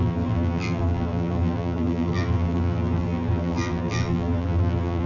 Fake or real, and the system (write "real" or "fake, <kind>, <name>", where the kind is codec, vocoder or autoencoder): fake, vocoder, BigVGAN v2